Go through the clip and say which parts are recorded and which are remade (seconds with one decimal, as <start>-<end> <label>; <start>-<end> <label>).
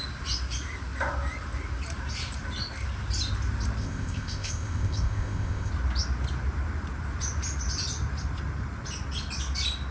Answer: 0.0-3.8 recorded; 3.8-5.7 remade; 5.7-9.9 recorded